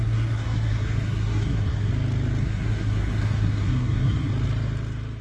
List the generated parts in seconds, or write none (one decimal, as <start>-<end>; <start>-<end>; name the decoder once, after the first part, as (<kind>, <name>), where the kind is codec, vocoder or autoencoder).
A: 0.0-1.9 (codec, SNAC); 2.4-4.3